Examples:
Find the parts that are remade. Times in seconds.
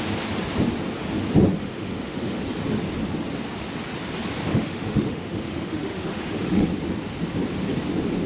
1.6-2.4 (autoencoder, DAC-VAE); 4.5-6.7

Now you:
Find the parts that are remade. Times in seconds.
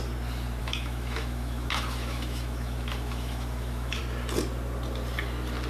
0.6-4.0 (autoencoder, DAC-VAE)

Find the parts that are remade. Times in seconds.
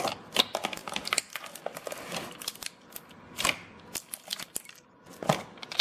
none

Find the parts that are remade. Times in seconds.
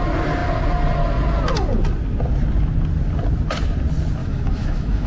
4.2-5.1 (autoencoder, DAC-VAE)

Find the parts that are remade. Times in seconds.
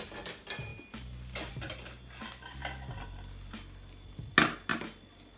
none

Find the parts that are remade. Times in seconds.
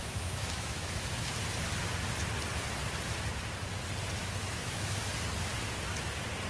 0.0-1.3 (autoencoder, DAC-VAE); 4.2-5.0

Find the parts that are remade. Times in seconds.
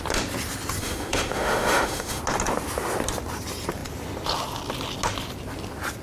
0.8-2.2 (autoencoder, DAC-VAE)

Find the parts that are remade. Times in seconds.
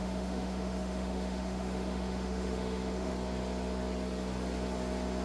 0.0-3.1 (autoencoder, DAC-VAE)